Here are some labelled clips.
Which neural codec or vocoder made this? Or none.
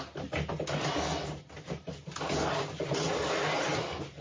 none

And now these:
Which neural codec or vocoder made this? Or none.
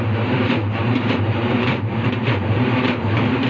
vocoder, BigVGAN v2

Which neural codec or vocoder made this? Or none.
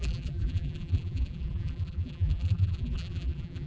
vocoder, BigVGAN v2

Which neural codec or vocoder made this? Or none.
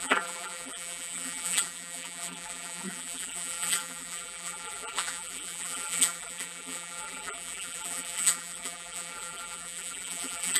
vocoder, BigVGAN v2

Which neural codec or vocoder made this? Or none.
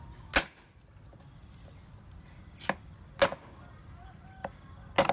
none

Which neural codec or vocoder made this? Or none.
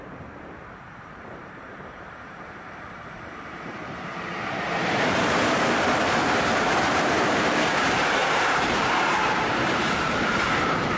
vocoder, BigVGAN v2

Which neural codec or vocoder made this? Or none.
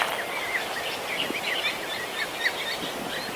none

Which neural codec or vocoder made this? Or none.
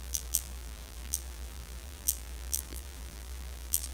vocoder, BigVGAN v2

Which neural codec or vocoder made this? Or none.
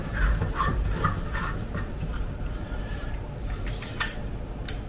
vocoder, BigVGAN v2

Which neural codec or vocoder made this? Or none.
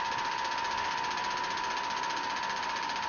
none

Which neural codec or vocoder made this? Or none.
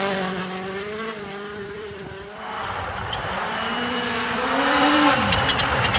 vocoder, BigVGAN v2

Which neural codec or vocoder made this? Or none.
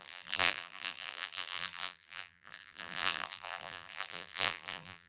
vocoder, BigVGAN v2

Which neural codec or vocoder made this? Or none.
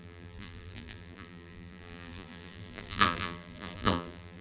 vocoder, BigVGAN v2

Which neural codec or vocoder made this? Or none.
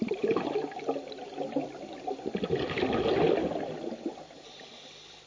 none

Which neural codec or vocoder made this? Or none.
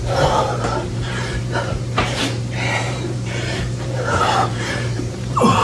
vocoder, BigVGAN v2